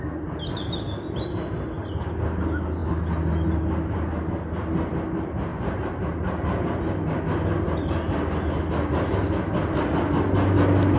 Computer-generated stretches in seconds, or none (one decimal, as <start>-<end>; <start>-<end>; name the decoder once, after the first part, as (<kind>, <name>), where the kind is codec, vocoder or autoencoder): 5.5-7.2 (vocoder, BigVGAN v2)